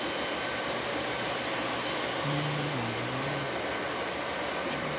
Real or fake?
real